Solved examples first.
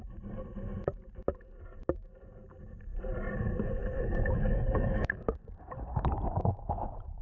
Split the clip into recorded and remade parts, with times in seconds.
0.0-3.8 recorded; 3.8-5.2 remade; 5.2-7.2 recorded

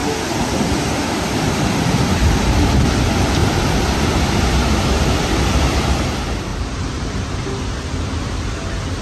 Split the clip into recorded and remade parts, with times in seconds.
0.0-3.4 recorded; 3.4-4.1 remade; 4.1-6.5 recorded; 6.5-7.5 remade; 7.5-9.0 recorded

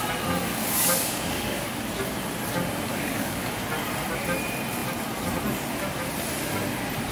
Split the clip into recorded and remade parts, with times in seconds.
0.0-0.5 recorded; 0.5-1.8 remade; 1.8-2.9 recorded; 2.9-3.5 remade; 3.5-7.1 recorded

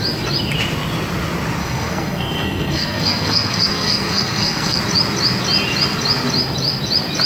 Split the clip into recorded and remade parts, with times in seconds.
0.0-1.6 recorded; 1.6-4.8 remade; 4.8-7.3 recorded

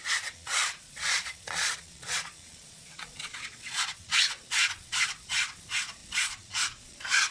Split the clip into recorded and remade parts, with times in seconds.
0.0-7.3 remade

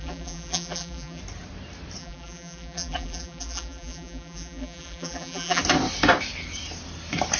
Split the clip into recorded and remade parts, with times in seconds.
0.0-1.2 remade; 1.2-2.0 recorded; 2.0-5.6 remade; 5.6-7.4 recorded